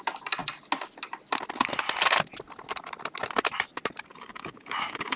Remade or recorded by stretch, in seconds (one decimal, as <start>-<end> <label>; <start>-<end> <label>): 0.0-4.1 recorded; 4.1-5.2 remade